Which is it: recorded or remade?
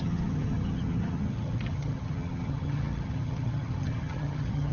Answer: remade